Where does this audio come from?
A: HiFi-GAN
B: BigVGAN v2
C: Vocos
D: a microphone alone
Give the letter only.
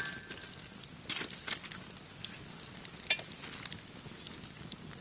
D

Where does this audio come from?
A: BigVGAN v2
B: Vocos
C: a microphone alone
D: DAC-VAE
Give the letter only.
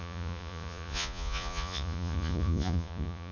B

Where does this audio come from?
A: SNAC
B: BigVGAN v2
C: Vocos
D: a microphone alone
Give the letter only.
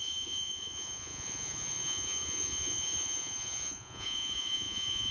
C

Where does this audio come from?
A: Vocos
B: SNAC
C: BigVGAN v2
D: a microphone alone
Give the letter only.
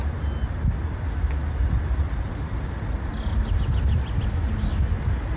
D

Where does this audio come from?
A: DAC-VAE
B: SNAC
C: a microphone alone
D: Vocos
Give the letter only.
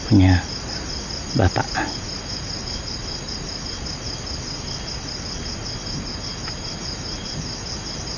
C